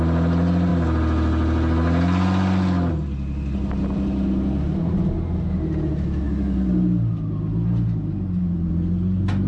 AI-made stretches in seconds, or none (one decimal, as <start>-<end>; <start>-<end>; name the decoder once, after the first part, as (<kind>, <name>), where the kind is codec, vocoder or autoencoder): none